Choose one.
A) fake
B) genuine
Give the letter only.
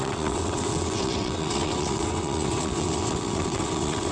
A